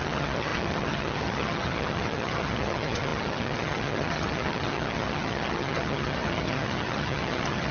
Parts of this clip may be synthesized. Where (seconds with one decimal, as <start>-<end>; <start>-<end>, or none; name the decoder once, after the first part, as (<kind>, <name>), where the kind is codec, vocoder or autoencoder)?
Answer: 0.0-7.7 (vocoder, HiFi-GAN)